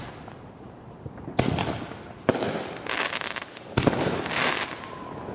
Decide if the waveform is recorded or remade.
recorded